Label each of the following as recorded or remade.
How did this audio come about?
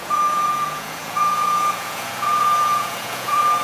remade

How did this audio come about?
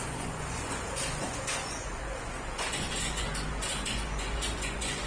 remade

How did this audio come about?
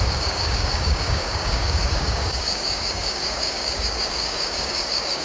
remade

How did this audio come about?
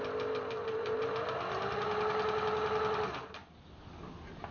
recorded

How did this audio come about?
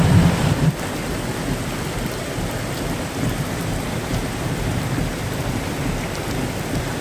recorded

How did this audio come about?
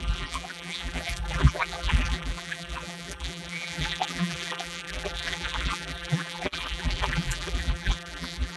remade